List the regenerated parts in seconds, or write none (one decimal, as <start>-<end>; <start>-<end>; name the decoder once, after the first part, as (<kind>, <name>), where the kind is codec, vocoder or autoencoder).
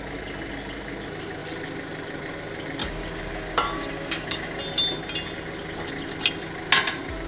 2.8-4.6 (codec, DAC)